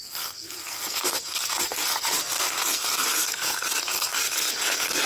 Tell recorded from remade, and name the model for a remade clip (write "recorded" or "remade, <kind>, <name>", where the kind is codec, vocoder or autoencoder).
remade, codec, SNAC